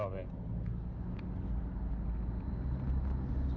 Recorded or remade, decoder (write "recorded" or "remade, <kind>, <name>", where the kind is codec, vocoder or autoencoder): recorded